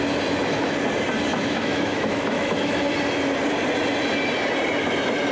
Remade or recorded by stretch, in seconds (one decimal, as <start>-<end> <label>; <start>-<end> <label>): 0.0-1.3 recorded; 1.3-2.9 remade; 2.9-5.3 recorded